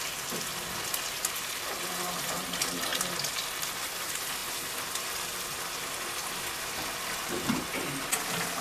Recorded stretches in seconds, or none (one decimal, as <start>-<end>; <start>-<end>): 0.0-8.6